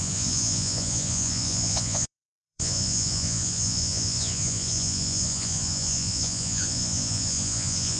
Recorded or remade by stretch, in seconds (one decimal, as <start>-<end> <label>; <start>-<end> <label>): 0.0-8.0 remade